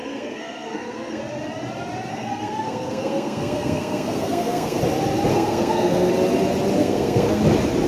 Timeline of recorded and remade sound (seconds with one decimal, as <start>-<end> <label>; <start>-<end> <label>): 0.0-1.2 remade; 1.2-2.1 recorded; 2.1-4.8 remade; 4.8-5.3 recorded; 5.3-6.1 remade; 6.1-6.8 recorded; 6.8-7.4 remade; 7.4-7.9 recorded